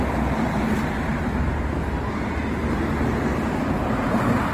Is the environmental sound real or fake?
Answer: real